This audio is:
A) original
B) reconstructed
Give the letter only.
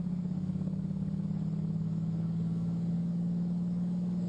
B